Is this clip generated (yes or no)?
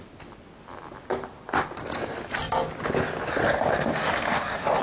no